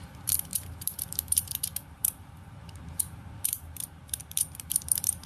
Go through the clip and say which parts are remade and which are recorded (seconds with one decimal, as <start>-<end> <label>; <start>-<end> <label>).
0.0-5.3 remade